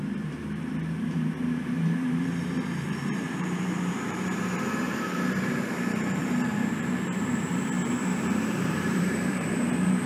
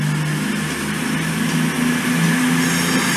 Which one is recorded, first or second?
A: second